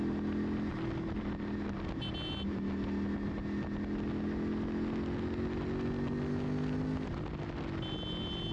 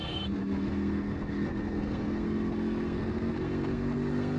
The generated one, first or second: second